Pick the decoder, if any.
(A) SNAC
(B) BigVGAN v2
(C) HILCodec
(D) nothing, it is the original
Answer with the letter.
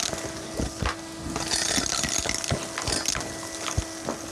D